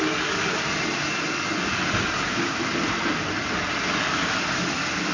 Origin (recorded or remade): recorded